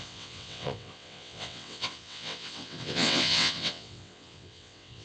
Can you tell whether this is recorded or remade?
remade